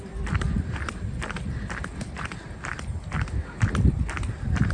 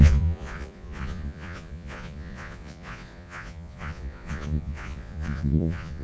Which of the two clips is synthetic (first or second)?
second